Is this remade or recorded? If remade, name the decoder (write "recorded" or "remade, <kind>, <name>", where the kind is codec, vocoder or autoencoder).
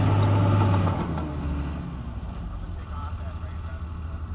recorded